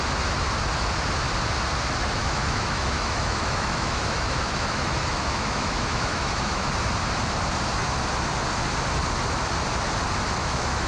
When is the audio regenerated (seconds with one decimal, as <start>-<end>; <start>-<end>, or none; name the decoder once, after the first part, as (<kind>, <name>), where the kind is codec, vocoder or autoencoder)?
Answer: 2.2-6.7 (autoencoder, DAC-VAE); 10.4-10.9